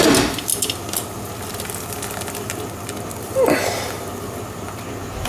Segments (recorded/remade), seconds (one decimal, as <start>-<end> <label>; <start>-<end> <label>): 0.0-5.3 recorded